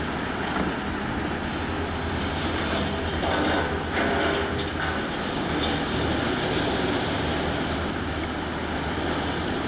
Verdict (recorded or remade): recorded